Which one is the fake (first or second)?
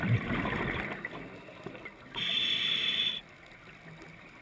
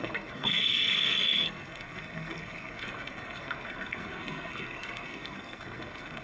second